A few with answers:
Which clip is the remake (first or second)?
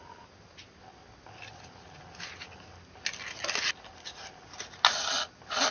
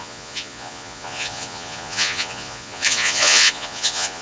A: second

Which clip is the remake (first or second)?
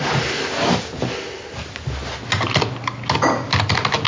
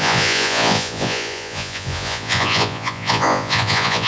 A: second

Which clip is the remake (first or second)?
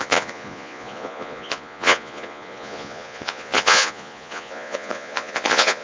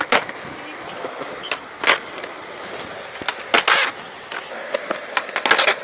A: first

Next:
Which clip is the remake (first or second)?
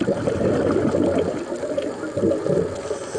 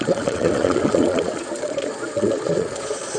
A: second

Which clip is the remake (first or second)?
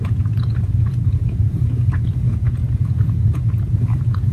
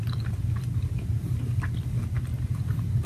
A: first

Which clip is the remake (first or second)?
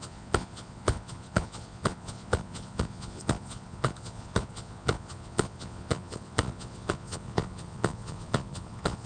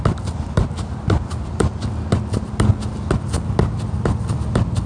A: first